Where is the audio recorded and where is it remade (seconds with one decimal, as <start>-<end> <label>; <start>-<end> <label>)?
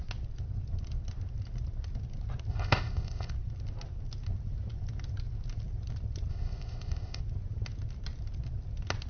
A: 0.0-2.5 recorded; 2.5-3.3 remade; 3.3-6.3 recorded; 6.3-7.2 remade; 7.2-9.1 recorded